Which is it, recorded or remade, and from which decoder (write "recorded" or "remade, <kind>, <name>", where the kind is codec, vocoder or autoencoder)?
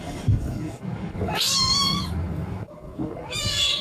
remade, codec, DAC